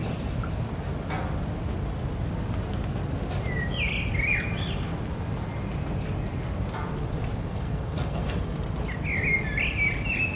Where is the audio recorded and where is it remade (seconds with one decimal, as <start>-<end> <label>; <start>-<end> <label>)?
0.0-7.4 recorded; 7.4-8.4 remade; 8.4-10.4 recorded